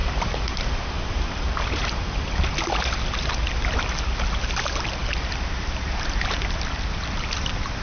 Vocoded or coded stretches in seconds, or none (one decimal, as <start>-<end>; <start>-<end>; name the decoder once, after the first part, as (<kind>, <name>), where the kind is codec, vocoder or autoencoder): 0.0-2.2 (vocoder, BigVGAN v2); 5.0-5.7